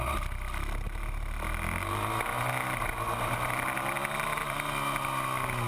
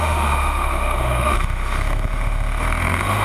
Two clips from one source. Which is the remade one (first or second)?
second